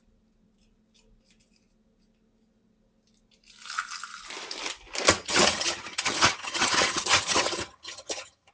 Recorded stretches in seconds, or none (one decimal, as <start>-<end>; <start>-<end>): 0.0-5.2